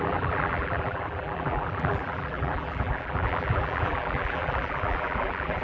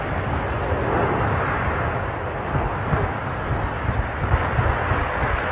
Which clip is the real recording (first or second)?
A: second